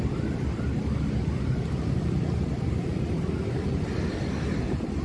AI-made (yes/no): no